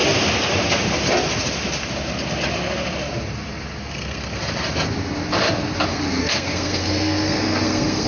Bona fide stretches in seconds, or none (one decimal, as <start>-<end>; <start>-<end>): 0.0-3.8; 4.4-5.9

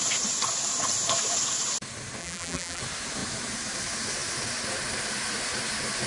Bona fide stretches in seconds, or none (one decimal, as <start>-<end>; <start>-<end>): 0.0-2.2; 2.8-6.1

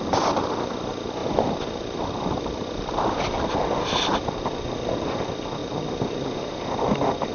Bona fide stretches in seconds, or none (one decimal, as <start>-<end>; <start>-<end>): 0.0-1.2; 3.0-7.3

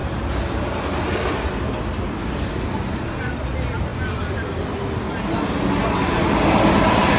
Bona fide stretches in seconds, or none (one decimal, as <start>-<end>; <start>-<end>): 0.0-7.2

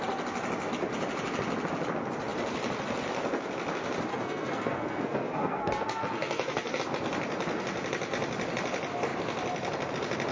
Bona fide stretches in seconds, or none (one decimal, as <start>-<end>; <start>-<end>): 0.0-4.1; 6.8-10.3

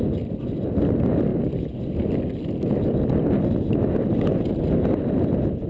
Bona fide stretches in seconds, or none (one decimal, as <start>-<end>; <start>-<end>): 0.0-5.7

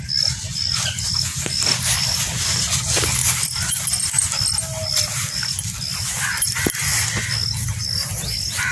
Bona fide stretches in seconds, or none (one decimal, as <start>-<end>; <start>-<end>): 0.0-8.7

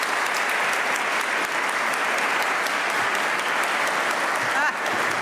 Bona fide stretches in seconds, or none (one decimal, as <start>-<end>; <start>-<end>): 0.0-5.2